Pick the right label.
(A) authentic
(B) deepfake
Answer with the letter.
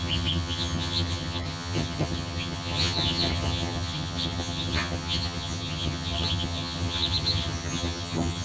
B